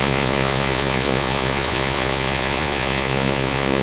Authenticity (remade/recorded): remade